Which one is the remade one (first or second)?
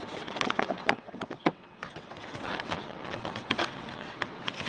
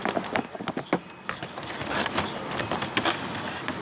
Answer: first